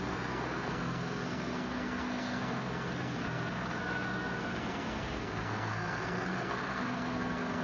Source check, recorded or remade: remade